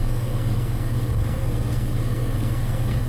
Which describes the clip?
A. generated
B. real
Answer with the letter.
A